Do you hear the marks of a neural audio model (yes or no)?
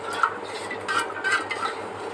no